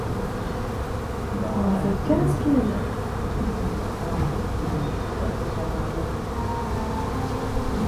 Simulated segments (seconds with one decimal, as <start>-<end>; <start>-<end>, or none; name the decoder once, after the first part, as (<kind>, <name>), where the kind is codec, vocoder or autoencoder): 2.7-4.9 (vocoder, BigVGAN v2)